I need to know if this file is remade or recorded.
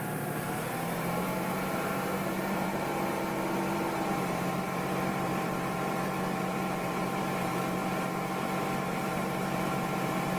remade